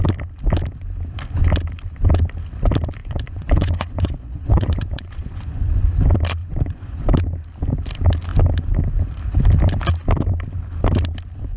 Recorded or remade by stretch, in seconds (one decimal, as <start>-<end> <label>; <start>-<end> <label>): 0.0-3.0 recorded; 3.0-5.9 remade; 5.9-6.4 recorded; 6.4-7.0 remade; 7.0-11.6 recorded